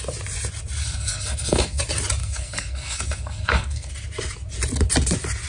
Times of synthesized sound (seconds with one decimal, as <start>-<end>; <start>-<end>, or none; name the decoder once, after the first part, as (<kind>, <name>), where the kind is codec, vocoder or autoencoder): 0.8-1.8 (codec, SNAC); 2.2-3.9